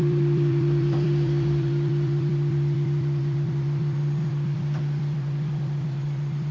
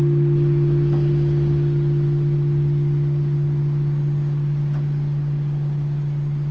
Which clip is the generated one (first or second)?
first